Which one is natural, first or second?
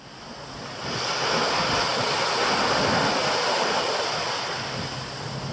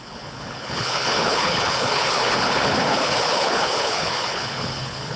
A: first